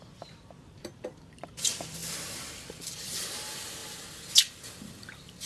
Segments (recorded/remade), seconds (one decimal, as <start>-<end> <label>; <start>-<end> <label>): 0.0-2.0 remade; 2.0-2.5 recorded; 2.5-3.8 remade; 3.8-5.5 recorded